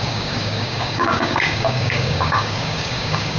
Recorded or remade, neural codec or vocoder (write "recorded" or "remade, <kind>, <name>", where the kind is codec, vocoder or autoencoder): remade, codec, DAC